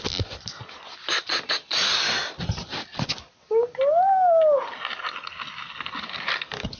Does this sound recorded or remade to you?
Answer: recorded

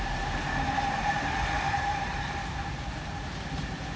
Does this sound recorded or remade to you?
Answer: remade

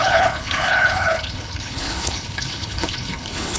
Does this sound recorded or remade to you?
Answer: remade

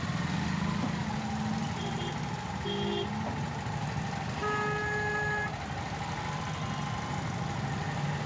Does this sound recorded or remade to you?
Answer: recorded